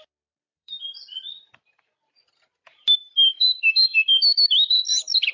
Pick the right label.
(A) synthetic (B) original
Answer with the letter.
A